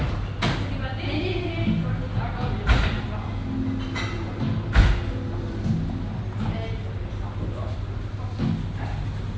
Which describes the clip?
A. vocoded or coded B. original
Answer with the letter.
B